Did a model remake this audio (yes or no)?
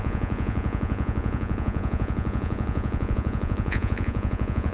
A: yes